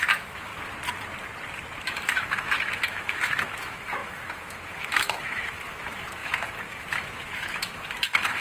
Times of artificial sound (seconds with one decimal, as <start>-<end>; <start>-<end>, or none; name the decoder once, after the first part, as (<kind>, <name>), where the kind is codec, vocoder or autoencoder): 0.0-0.5 (autoencoder, DAC-VAE); 1.8-8.4